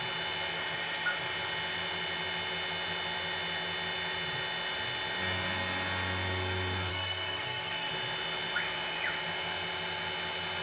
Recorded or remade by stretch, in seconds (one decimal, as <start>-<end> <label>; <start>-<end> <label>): 0.0-6.9 recorded; 6.9-7.9 remade; 7.9-10.6 recorded